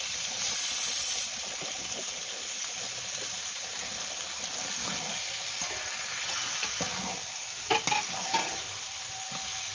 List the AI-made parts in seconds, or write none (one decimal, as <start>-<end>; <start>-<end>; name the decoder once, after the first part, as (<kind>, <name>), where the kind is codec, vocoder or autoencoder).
0.0-3.9 (vocoder, BigVGAN v2); 8.2-9.7